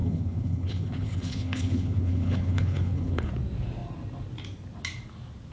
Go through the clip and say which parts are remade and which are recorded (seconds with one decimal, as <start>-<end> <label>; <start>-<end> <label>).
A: 0.0-3.3 remade; 3.3-5.5 recorded